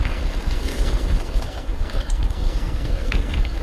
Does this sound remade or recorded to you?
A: remade